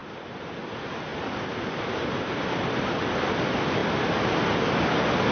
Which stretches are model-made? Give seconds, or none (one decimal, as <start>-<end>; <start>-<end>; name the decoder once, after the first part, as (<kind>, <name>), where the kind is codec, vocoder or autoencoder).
0.0-0.6 (vocoder, BigVGAN v2); 1.1-2.5